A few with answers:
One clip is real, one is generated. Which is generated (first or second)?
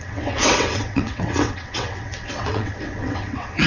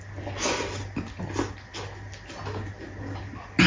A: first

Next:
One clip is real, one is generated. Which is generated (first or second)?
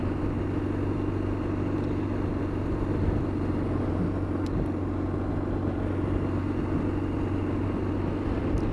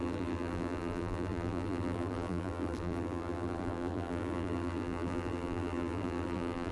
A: second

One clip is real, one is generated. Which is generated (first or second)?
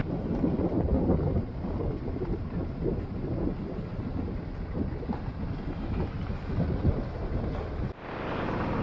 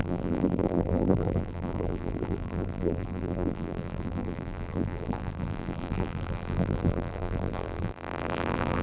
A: second